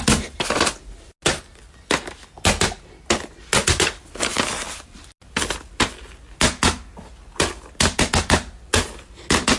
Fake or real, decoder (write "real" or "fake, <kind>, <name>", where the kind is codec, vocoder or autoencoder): real